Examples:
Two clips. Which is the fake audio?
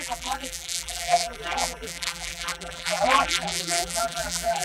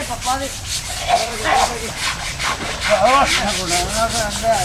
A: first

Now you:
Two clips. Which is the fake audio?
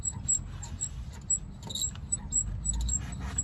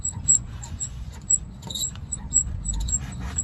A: second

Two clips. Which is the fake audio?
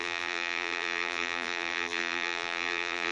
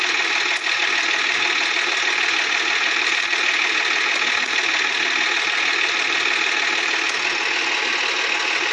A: first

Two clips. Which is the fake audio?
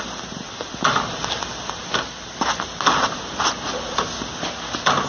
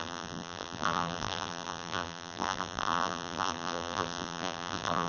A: second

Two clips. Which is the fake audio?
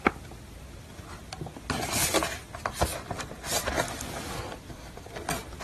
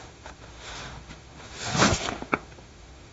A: second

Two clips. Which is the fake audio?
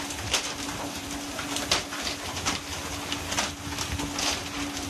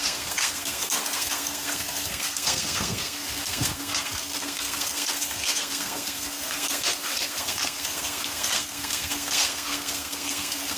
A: second